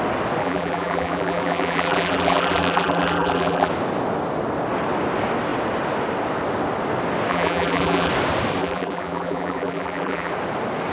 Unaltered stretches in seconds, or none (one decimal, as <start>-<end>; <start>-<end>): 0.0-0.4; 3.7-7.3; 8.1-8.6; 10.3-10.9

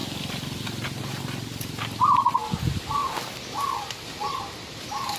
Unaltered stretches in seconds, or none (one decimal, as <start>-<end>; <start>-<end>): 0.0-5.2

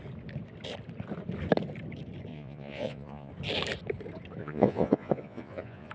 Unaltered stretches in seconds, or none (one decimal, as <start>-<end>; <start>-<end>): 0.0-2.3; 3.3-4.4

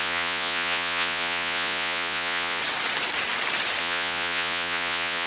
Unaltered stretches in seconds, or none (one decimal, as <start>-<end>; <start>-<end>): 2.6-3.8